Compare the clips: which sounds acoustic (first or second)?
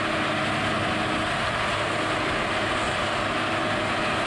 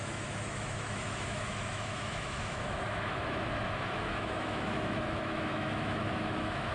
first